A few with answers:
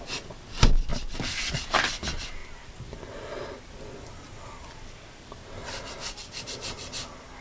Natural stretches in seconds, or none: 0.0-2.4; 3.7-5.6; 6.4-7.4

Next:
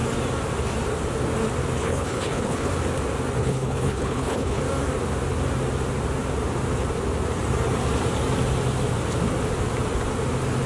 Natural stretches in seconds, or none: 0.0-1.8; 2.7-3.4; 4.6-10.7

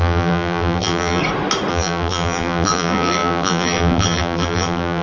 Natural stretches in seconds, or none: 1.2-1.7

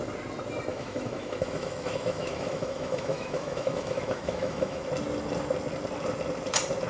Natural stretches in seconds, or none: 0.0-0.7; 4.8-6.9